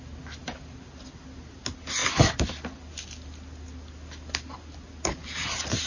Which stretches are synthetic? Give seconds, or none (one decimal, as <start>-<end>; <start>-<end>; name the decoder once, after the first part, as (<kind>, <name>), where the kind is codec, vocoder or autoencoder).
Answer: none